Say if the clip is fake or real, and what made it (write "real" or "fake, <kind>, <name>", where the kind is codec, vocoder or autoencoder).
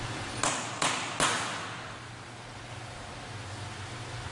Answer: real